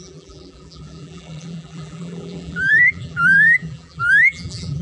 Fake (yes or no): yes